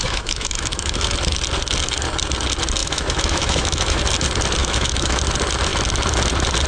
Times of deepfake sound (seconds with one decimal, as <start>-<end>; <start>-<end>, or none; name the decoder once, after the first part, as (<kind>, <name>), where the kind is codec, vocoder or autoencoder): 0.0-1.1 (autoencoder, DAC-VAE); 2.8-4.0; 4.6-5.2